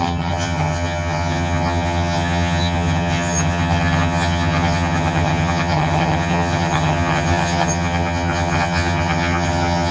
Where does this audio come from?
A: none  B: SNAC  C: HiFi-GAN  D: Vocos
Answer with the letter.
C